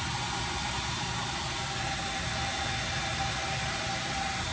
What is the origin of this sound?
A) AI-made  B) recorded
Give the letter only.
B